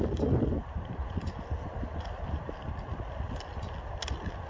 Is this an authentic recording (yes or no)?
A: yes